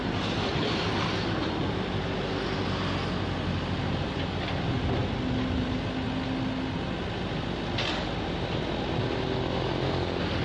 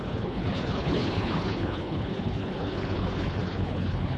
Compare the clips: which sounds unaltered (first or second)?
first